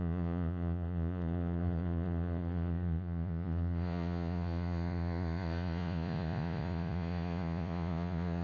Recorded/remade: remade